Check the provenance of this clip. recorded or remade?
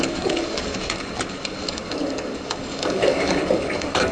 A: remade